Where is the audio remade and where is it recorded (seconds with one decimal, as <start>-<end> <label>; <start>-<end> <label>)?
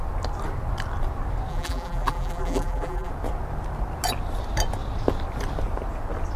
0.0-1.5 recorded; 1.5-3.1 remade; 3.1-6.4 recorded